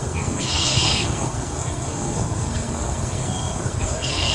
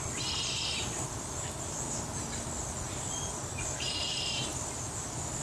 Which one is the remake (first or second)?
first